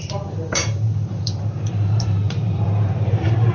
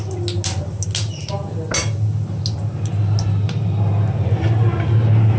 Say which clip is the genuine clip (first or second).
second